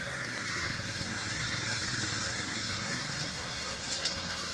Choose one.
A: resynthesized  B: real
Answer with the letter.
A